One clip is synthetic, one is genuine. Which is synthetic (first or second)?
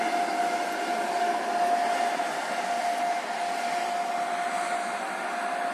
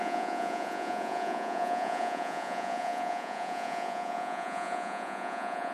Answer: second